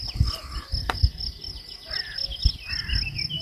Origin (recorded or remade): recorded